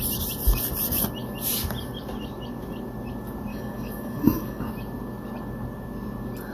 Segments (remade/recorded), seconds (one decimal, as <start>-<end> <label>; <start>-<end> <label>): 0.0-3.5 recorded; 3.5-4.7 remade; 4.7-6.5 recorded

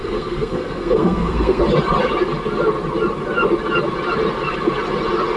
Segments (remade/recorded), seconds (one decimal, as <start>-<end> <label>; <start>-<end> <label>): 0.0-1.6 remade; 1.6-5.4 recorded

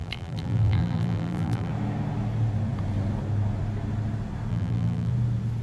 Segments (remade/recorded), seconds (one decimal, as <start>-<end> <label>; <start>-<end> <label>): 0.0-1.7 remade; 1.7-4.5 recorded; 4.5-5.1 remade; 5.1-5.6 recorded

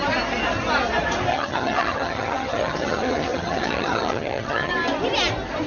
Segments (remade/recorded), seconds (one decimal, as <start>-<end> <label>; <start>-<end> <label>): 0.0-1.3 recorded; 1.3-4.7 remade; 4.7-5.7 recorded

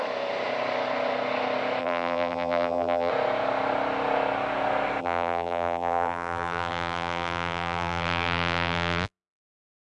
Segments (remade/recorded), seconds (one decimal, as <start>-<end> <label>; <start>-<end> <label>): 0.0-1.8 recorded; 1.8-3.1 remade; 3.1-5.0 recorded; 5.0-9.9 remade

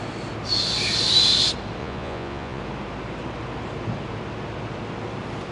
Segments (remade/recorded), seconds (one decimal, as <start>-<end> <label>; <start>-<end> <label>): 0.0-1.8 recorded; 1.8-2.6 remade; 2.6-5.5 recorded